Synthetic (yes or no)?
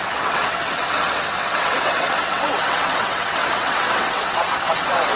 yes